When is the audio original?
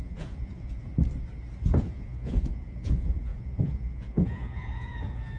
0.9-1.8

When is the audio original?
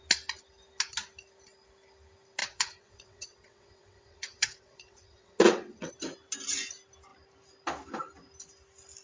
0.0-2.4; 5.9-9.0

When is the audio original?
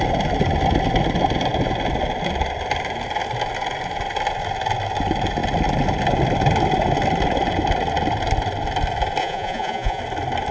0.0-9.2; 10.0-10.5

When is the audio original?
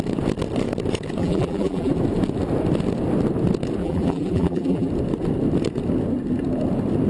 0.0-1.2; 1.9-3.8; 4.9-7.1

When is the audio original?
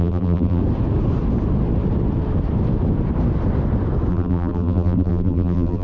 0.6-4.1